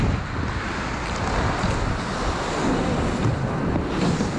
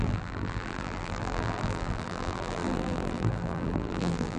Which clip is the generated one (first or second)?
second